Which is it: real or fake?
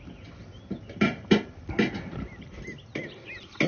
real